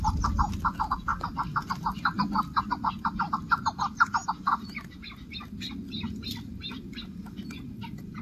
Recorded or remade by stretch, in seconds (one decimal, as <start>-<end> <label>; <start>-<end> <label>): 0.0-8.2 recorded